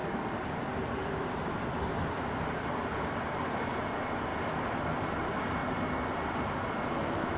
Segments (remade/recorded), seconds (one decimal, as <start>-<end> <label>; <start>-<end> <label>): 0.0-0.6 remade; 0.6-4.3 recorded; 4.3-4.8 remade; 4.8-7.4 recorded